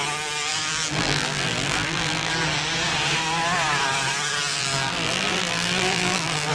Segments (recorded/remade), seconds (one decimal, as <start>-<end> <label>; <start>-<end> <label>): 0.0-0.5 recorded; 0.5-2.3 remade; 2.3-4.5 recorded; 4.5-6.5 remade